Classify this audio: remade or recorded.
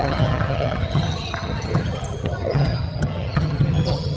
remade